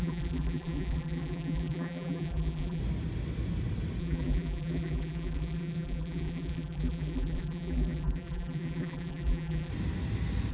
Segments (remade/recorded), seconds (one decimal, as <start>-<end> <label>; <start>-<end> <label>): 0.0-2.8 remade; 2.8-4.0 recorded; 4.0-9.7 remade; 9.7-10.5 recorded